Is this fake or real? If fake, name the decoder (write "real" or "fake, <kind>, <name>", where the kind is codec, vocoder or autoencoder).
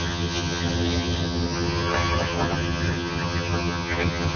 fake, vocoder, HiFi-GAN